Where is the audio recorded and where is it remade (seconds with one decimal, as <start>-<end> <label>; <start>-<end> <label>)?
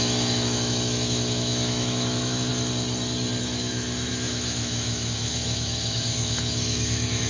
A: 0.0-2.5 remade; 2.5-3.4 recorded; 3.4-7.3 remade